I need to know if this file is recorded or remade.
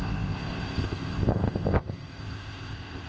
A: remade